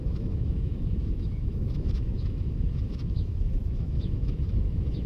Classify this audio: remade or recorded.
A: remade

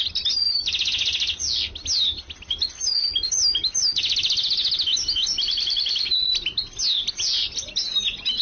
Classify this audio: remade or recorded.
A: recorded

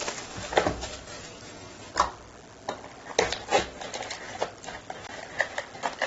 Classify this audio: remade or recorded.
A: recorded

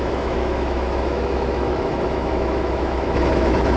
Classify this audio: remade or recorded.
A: remade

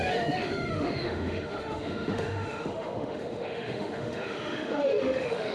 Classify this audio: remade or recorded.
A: remade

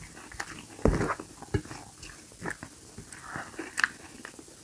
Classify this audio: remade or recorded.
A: recorded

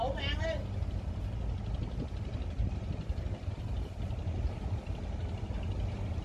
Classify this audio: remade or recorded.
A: recorded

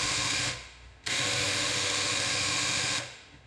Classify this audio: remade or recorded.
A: remade